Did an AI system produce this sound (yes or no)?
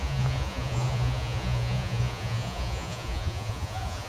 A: yes